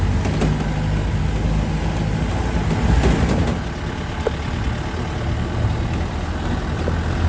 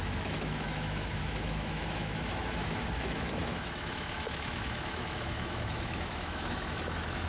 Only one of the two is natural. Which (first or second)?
first